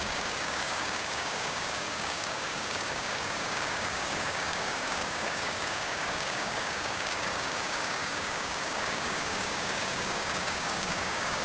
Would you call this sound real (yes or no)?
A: no